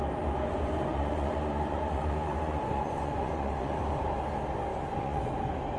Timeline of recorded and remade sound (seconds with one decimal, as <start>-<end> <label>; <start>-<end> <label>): 0.0-0.9 recorded; 0.9-3.8 remade; 3.8-4.7 recorded; 4.7-5.3 remade; 5.3-5.8 recorded